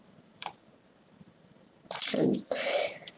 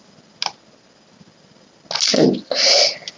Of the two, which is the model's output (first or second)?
first